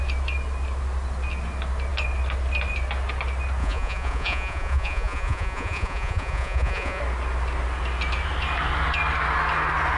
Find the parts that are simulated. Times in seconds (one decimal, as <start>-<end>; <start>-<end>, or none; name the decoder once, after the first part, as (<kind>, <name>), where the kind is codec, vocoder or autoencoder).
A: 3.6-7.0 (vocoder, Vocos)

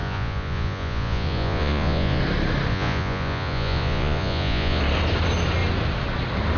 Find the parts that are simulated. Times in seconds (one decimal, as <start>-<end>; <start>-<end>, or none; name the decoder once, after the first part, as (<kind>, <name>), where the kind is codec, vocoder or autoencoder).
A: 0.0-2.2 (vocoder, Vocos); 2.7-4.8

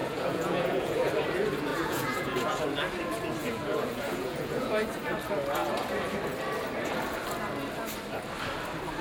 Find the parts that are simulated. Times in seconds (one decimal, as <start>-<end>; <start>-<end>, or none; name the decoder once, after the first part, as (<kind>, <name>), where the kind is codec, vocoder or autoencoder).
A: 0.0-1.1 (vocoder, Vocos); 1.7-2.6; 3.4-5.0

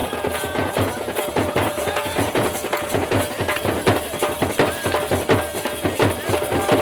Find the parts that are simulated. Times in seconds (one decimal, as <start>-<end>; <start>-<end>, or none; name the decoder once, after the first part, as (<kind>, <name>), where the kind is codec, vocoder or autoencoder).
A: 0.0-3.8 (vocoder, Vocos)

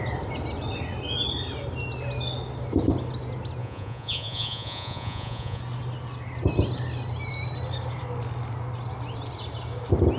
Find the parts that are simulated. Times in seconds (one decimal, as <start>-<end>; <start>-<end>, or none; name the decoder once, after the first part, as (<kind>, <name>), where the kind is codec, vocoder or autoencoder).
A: 3.6-5.6 (vocoder, Vocos)

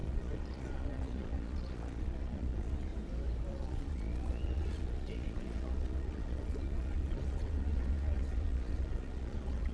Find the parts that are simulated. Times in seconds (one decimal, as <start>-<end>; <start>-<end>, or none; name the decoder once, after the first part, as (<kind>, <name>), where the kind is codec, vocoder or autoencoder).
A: 0.0-2.9 (vocoder, Vocos); 3.5-9.7

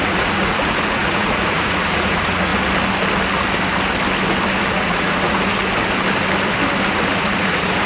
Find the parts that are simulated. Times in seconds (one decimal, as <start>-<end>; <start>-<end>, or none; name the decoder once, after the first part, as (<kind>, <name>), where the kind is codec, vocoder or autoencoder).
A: 0.0-2.5 (vocoder, Vocos); 4.7-5.5; 6.9-7.9